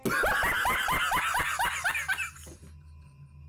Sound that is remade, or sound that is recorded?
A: recorded